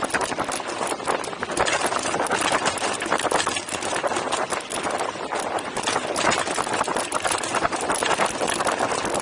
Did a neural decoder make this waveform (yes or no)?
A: no